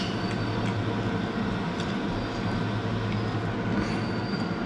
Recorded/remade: recorded